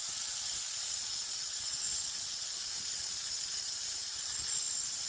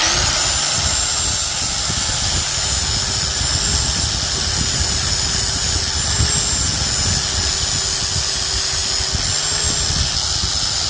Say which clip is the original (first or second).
second